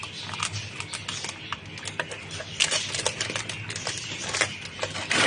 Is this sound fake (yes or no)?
no